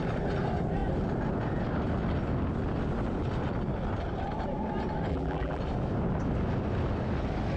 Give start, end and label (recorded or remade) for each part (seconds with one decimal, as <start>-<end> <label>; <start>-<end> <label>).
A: 0.0-5.1 recorded; 5.1-5.6 remade; 5.6-7.6 recorded